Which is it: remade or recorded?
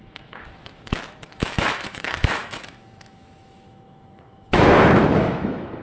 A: remade